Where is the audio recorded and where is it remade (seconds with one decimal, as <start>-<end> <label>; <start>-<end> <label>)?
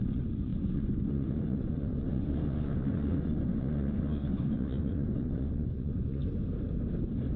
0.0-6.2 remade; 6.2-7.4 recorded